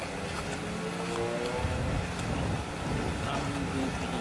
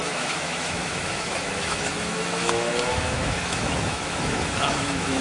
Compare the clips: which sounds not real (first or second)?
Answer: second